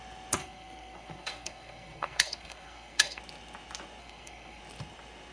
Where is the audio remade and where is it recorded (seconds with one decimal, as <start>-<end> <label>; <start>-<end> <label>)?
0.0-0.4 recorded; 0.4-3.2 remade; 3.2-4.0 recorded; 4.0-4.6 remade; 4.6-5.3 recorded